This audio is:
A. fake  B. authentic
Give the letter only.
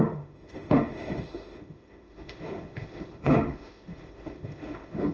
A